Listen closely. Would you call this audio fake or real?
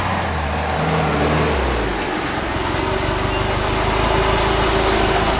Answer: real